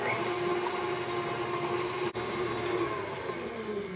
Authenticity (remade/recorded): recorded